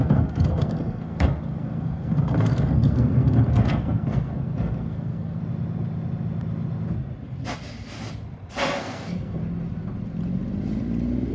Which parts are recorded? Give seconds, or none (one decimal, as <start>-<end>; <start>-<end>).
5.4-8.8; 9.4-11.3